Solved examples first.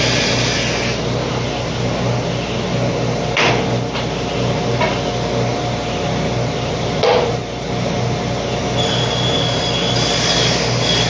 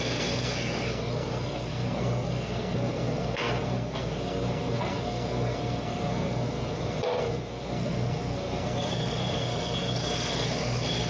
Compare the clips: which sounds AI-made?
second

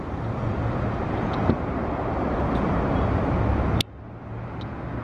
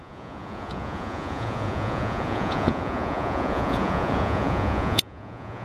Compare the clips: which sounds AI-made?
second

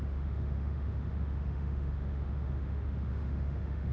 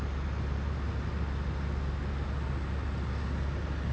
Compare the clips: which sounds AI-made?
first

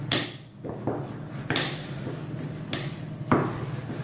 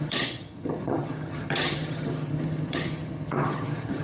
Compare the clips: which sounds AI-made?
second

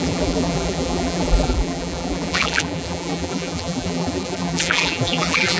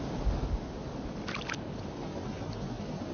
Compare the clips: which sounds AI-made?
first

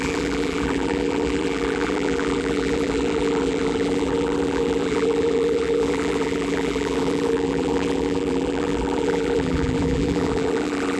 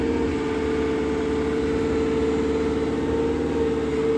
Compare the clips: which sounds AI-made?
first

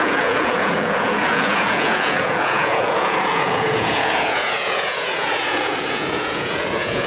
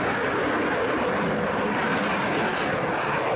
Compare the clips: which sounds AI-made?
first